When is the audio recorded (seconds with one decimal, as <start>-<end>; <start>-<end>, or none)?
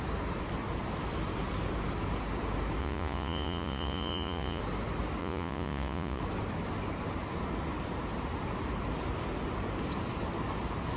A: 0.0-2.8; 4.6-5.2; 6.2-11.0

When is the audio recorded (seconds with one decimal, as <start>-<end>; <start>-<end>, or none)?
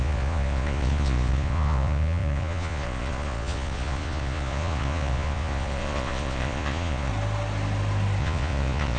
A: 7.1-8.2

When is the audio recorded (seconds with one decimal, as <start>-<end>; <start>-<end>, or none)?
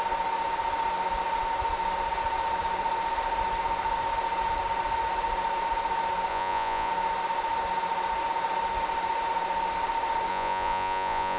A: 0.0-6.3; 6.9-10.3